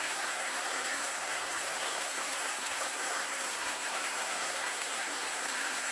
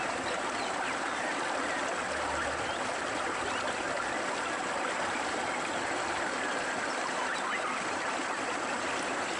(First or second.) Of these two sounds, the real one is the second